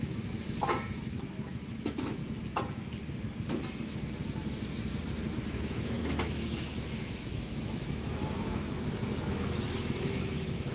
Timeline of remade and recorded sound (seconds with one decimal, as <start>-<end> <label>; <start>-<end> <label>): 0.0-2.2 remade; 2.2-5.3 recorded; 5.3-10.7 remade